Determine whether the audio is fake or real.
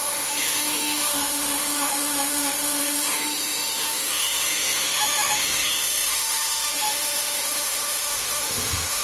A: fake